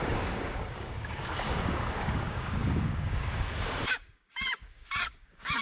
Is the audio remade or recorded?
remade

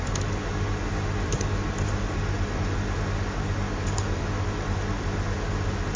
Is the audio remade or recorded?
recorded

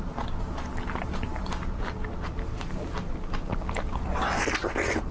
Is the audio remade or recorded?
recorded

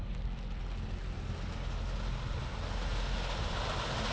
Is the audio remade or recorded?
recorded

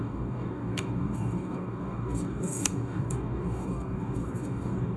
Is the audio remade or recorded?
remade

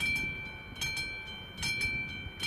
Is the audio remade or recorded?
recorded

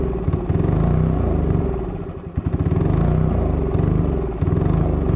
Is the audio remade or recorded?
recorded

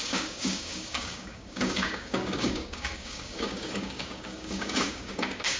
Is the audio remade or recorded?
remade